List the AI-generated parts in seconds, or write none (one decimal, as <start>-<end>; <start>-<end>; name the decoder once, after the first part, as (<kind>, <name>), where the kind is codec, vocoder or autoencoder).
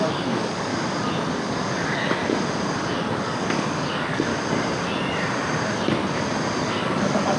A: 0.0-0.7 (codec, DAC); 1.3-2.2; 2.7-4.3; 6.6-7.4